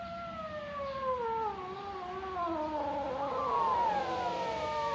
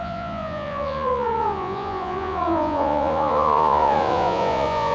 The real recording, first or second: first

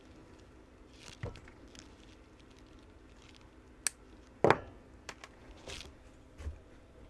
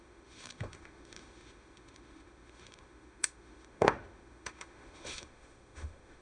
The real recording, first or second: first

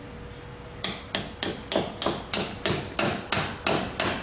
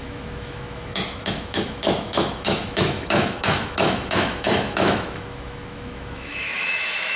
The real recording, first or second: first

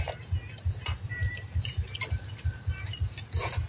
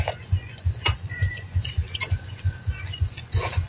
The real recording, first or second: first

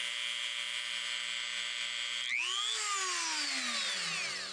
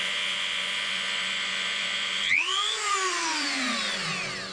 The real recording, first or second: first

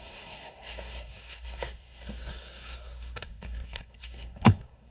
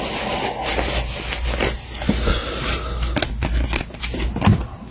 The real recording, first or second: second